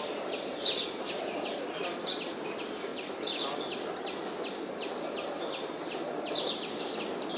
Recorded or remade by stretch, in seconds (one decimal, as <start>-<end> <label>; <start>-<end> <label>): 0.0-7.4 recorded